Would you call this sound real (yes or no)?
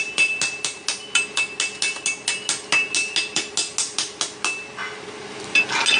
yes